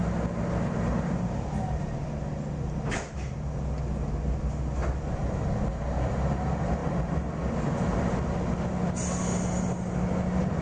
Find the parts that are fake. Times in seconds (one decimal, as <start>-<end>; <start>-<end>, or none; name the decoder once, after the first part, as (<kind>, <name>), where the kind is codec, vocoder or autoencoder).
none